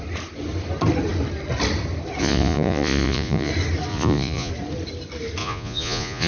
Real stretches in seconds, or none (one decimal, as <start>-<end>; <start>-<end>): 0.0-2.2; 3.5-3.9; 4.5-5.4